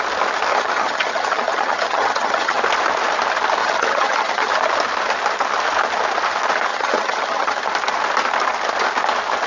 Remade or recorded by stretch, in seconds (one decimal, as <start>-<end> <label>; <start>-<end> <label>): 0.0-0.5 recorded; 0.5-2.6 remade; 2.6-3.6 recorded; 3.6-4.6 remade; 4.6-6.7 recorded; 6.7-7.6 remade; 7.6-9.5 recorded